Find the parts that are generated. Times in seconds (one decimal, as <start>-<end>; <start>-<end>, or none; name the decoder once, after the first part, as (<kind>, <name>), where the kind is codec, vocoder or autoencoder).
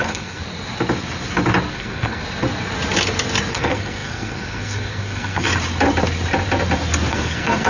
0.0-0.4 (codec, SNAC); 1.7-2.2; 3.5-5.5; 7.1-7.7